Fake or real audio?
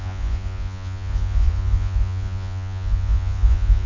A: fake